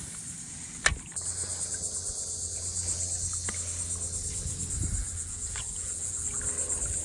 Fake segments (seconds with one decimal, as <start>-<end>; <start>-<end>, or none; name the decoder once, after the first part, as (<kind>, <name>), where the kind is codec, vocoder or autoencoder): 5.0-6.4 (vocoder, Vocos)